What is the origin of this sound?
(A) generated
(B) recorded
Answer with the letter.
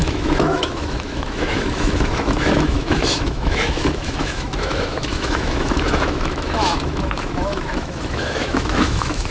A